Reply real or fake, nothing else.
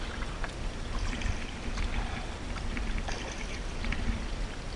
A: real